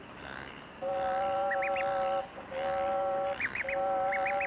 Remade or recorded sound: recorded